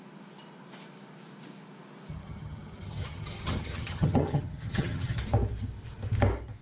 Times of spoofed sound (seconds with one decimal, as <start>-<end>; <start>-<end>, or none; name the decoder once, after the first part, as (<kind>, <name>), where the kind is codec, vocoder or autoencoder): 2.1-5.2 (vocoder, HiFi-GAN)